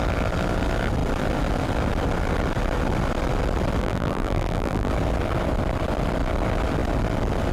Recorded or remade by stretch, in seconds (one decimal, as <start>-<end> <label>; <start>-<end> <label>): 0.0-3.8 recorded; 3.8-4.9 remade; 4.9-7.5 recorded

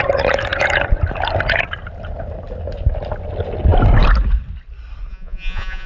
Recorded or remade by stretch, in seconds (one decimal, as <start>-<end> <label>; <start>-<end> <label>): 0.0-5.1 recorded; 5.1-5.9 remade

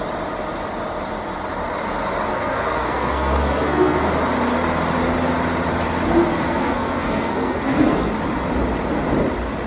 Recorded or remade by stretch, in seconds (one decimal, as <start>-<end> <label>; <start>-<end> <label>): 0.0-2.3 recorded; 2.3-4.1 remade; 4.1-6.3 recorded; 6.3-8.1 remade; 8.1-9.7 recorded

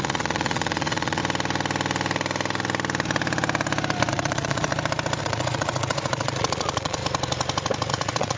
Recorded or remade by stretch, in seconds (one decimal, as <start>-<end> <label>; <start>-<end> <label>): 0.0-1.2 remade; 1.2-4.1 recorded; 4.1-4.7 remade; 4.7-5.2 recorded; 5.2-7.0 remade; 7.0-7.9 recorded; 7.9-8.4 remade